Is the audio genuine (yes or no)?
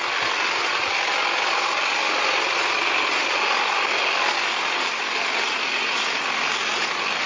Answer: yes